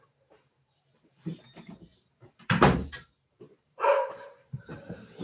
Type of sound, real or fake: fake